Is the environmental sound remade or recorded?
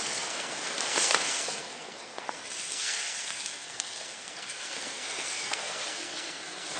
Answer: remade